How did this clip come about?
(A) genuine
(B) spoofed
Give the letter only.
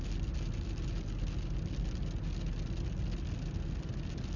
A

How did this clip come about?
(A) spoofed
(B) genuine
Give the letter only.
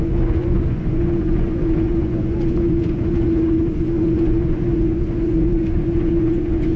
A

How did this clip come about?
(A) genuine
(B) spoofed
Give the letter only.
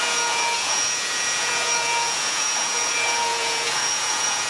B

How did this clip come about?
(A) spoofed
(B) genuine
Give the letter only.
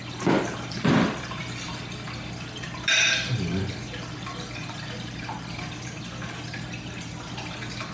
B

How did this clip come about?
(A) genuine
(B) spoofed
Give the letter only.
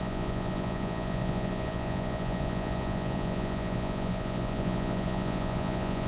B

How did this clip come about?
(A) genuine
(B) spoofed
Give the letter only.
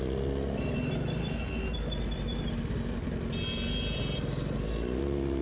A